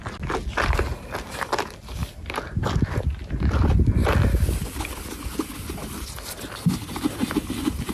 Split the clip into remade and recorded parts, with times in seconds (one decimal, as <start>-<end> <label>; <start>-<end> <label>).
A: 0.0-7.9 recorded